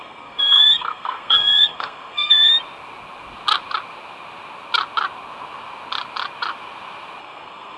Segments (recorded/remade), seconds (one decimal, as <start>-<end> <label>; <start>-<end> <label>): 0.0-2.5 remade; 2.5-7.2 recorded; 7.2-7.8 remade